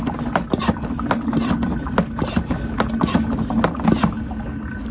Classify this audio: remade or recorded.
recorded